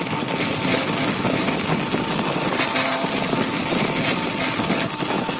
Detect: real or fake real